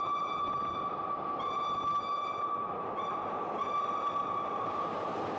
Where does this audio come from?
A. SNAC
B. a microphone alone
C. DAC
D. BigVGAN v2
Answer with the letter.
B